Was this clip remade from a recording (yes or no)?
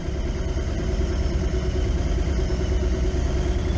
no